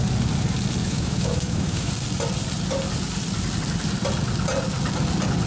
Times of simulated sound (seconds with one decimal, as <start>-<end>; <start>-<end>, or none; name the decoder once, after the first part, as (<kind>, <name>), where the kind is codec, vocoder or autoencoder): 0.8-1.9 (autoencoder, DAC-VAE)